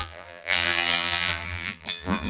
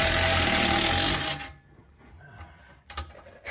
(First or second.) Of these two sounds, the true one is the second